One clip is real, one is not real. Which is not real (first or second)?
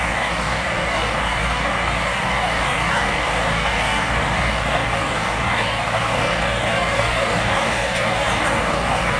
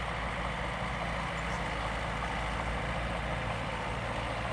first